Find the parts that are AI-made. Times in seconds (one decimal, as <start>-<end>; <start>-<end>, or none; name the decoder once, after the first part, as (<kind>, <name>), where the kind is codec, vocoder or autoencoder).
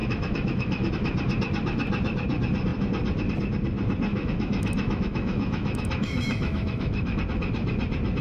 0.0-0.9 (autoencoder, DAC-VAE); 4.1-7.2